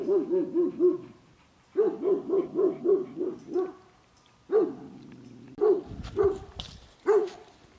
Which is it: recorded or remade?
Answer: recorded